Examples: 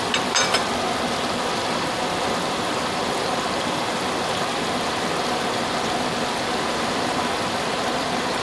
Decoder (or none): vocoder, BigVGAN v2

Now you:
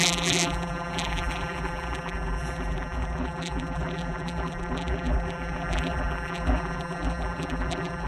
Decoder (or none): vocoder, BigVGAN v2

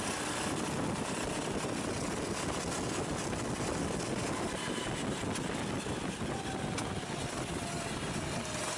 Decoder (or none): none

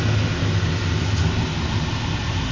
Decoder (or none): none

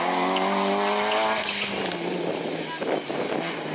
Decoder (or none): none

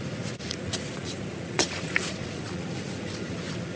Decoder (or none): vocoder, Vocos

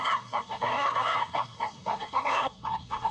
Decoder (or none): codec, SNAC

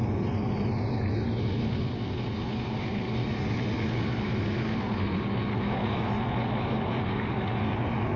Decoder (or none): none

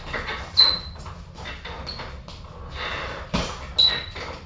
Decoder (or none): none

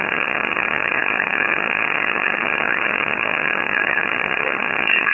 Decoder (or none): vocoder, HiFi-GAN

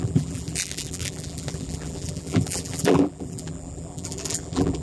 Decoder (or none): vocoder, BigVGAN v2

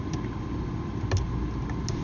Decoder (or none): none